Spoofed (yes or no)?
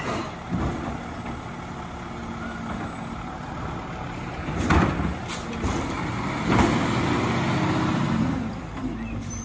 no